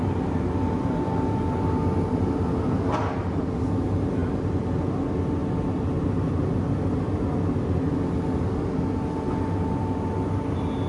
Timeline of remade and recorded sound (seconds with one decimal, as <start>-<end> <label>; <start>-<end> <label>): 0.0-10.9 recorded